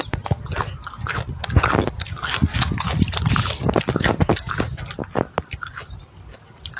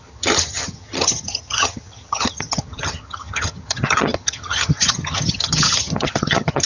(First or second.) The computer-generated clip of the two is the second